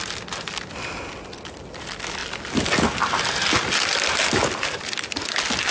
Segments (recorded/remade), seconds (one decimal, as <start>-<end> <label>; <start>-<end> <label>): 0.0-5.7 recorded